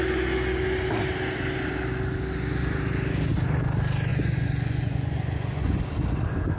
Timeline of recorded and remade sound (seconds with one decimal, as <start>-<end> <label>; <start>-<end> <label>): 0.0-4.1 recorded; 4.1-5.8 remade; 5.8-6.6 recorded